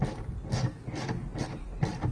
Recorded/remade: recorded